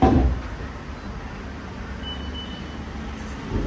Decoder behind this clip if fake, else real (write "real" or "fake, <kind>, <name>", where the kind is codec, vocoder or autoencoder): real